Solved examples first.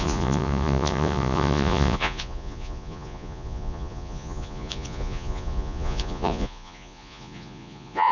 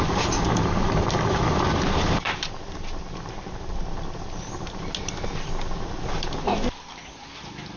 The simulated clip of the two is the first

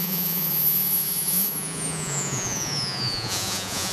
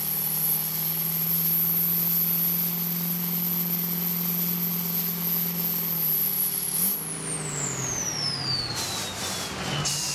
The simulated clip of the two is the first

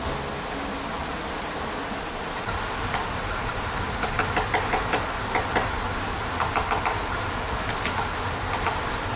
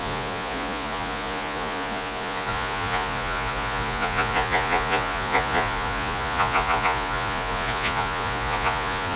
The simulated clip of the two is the second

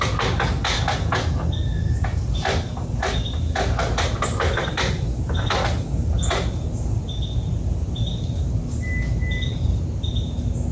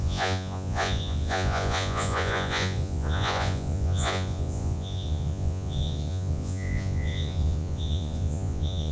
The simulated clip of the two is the second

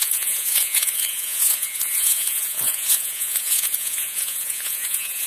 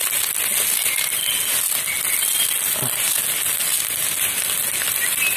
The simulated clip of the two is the first